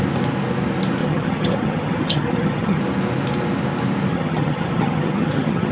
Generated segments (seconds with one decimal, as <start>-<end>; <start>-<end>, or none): 1.0-2.8; 4.1-5.7

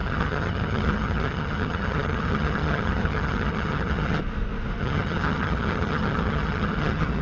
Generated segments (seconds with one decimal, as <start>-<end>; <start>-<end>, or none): 0.0-4.2; 4.8-7.2

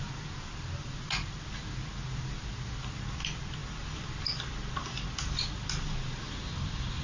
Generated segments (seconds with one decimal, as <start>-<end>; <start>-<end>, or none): none